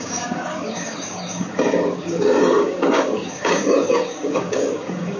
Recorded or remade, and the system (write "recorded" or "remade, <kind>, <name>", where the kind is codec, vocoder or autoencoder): remade, codec, DAC